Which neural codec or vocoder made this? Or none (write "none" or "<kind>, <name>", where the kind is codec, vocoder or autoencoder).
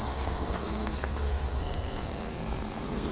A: codec, SNAC